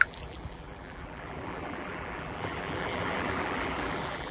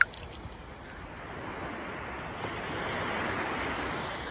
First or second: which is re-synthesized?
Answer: first